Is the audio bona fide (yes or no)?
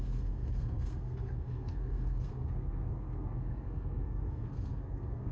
no